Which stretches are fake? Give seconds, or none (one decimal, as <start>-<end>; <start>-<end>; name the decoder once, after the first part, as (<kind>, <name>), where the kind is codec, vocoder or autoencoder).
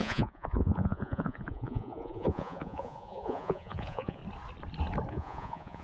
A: 0.0-4.2 (vocoder, Vocos); 5.1-5.8